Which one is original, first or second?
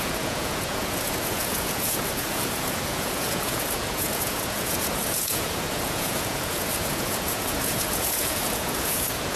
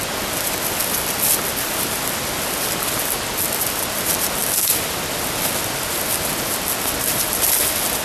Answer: second